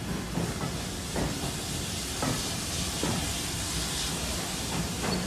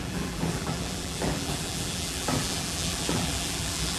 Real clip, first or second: first